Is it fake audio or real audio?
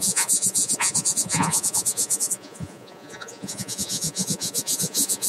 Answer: fake